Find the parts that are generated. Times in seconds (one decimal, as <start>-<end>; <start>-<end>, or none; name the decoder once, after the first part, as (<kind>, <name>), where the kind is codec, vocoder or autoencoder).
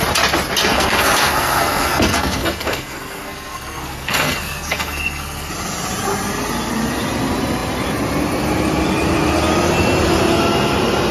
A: 0.6-5.5 (codec, SNAC)